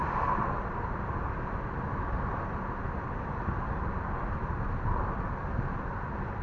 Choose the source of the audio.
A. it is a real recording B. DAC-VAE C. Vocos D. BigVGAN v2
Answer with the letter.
A